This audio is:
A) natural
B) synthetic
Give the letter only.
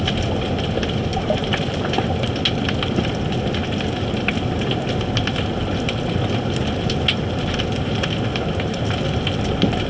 A